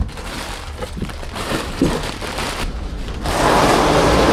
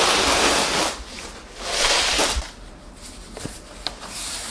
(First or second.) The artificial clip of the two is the first